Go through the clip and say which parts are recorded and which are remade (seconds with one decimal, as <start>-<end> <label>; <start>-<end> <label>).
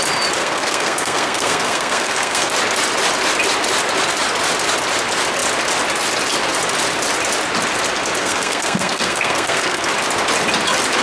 0.0-0.4 recorded; 0.4-2.5 remade; 2.5-8.2 recorded; 8.2-9.9 remade; 9.9-11.0 recorded